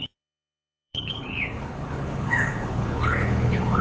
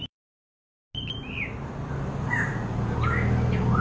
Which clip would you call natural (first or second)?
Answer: second